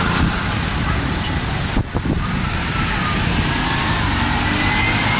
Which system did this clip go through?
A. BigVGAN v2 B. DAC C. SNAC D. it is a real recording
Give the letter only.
D